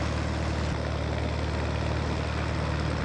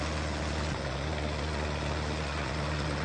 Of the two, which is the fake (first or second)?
second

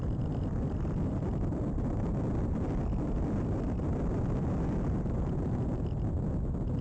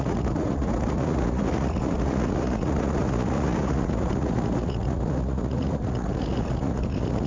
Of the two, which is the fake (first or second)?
second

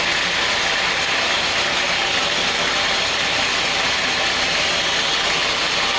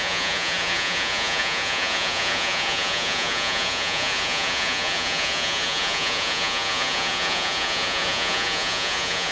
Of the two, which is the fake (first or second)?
second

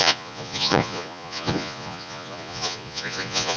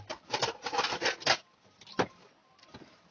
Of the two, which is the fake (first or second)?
first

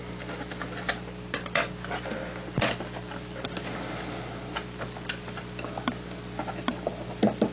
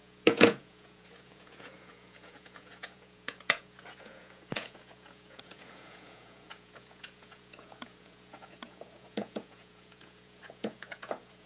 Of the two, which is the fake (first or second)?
second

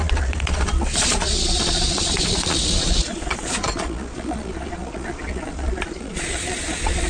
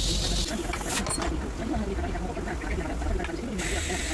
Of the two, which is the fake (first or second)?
first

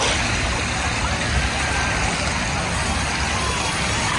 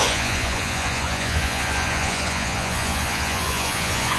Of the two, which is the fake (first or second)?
second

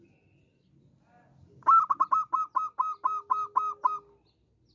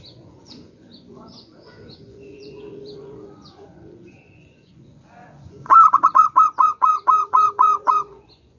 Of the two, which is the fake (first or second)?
second